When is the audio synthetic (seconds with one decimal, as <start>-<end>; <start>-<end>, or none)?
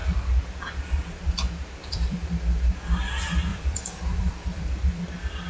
1.8-2.7; 3.5-4.7